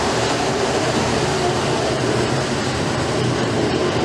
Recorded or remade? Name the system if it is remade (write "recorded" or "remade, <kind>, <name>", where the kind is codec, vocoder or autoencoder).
remade, vocoder, BigVGAN v2